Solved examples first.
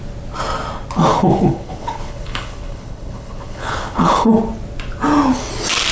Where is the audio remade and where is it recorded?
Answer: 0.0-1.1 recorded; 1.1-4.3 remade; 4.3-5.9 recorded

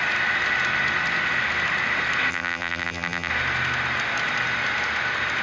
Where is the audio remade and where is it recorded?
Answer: 0.0-2.3 recorded; 2.3-3.3 remade; 3.3-5.4 recorded

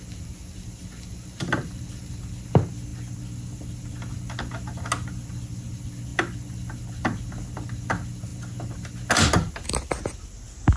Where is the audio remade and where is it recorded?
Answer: 0.0-10.8 recorded

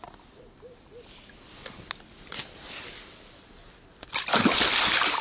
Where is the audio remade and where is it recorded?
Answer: 0.0-5.2 recorded

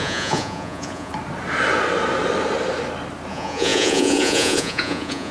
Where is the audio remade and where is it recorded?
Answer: 0.0-1.1 remade; 1.1-3.3 recorded; 3.3-5.3 remade

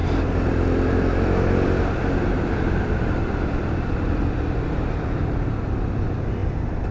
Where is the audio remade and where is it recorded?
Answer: 0.0-4.1 remade; 4.1-6.4 recorded; 6.4-6.9 remade